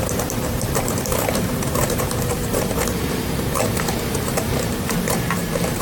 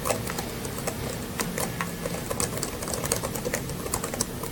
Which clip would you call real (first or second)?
second